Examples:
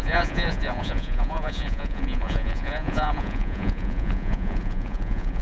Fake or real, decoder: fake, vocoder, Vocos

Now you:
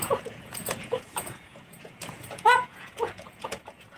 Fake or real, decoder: fake, vocoder, Vocos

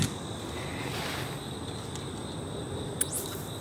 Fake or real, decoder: real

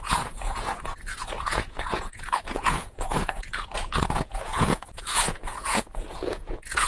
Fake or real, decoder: fake, vocoder, Vocos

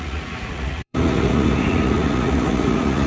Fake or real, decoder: fake, vocoder, Vocos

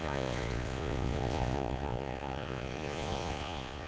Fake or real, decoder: fake, vocoder, Vocos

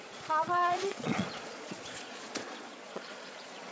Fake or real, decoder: fake, vocoder, Vocos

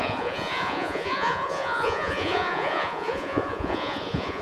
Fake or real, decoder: fake, vocoder, Vocos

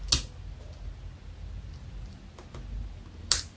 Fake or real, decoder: real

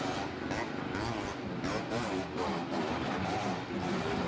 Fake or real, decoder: real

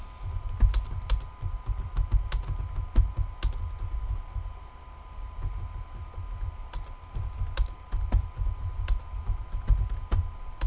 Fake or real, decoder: real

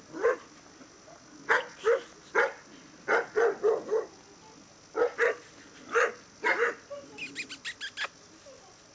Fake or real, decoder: real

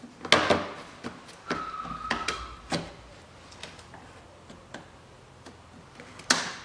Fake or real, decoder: real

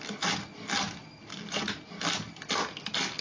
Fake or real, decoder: real